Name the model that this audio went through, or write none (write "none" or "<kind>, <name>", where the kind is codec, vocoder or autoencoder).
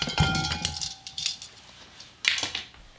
none